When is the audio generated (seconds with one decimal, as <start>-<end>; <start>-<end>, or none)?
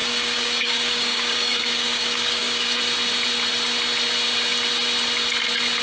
0.0-2.8